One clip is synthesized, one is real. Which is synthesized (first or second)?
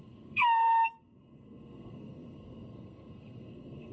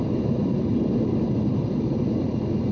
first